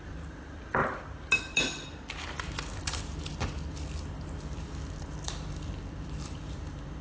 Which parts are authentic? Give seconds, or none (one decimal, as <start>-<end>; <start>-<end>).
0.8-5.0